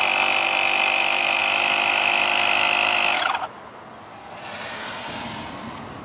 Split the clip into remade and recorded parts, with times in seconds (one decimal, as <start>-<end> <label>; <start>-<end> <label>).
0.0-6.0 recorded